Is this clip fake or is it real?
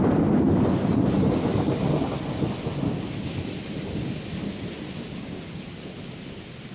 real